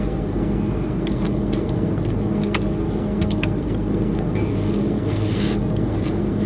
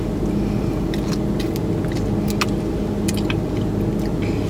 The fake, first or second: first